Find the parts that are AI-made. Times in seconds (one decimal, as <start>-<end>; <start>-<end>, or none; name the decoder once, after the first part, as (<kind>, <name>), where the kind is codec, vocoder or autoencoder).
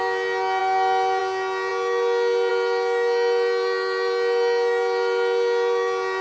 none